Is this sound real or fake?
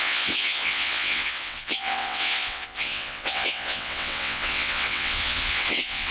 fake